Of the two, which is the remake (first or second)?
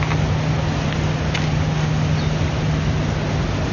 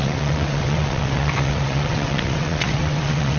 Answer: second